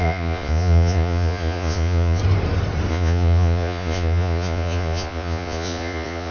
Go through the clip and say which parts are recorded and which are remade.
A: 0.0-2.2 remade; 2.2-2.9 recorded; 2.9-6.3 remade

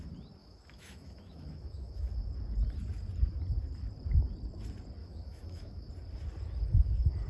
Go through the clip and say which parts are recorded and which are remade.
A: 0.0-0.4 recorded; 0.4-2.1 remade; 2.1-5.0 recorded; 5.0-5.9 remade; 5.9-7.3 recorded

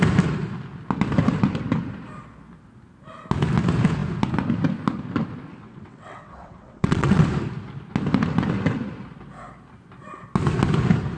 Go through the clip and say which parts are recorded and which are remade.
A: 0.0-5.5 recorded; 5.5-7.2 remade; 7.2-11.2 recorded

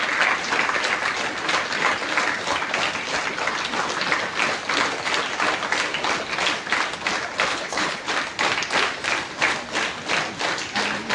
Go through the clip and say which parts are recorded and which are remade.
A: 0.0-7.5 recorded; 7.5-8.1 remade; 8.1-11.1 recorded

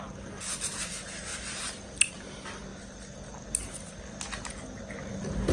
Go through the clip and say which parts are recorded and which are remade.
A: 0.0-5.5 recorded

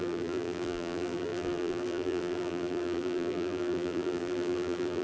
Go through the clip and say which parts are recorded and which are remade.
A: 0.0-5.0 remade